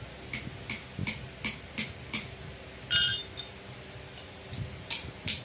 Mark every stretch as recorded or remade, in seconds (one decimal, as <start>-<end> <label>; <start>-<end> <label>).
0.0-5.4 recorded